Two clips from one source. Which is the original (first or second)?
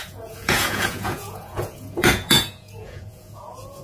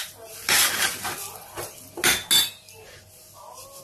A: second